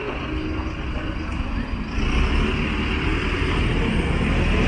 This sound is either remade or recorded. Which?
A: recorded